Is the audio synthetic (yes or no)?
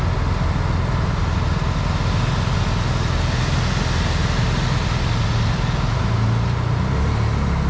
no